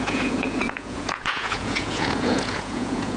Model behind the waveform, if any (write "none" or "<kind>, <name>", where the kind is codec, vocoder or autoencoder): vocoder, Vocos